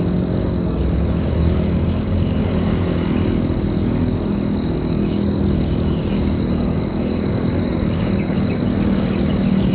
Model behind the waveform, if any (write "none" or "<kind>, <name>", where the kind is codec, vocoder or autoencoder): codec, DAC